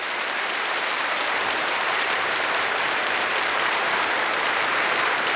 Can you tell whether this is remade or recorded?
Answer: remade